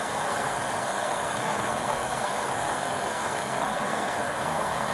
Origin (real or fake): fake